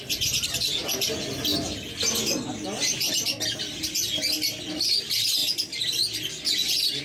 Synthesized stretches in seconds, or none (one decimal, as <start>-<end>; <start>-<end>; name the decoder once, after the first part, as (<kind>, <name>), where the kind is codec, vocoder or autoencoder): none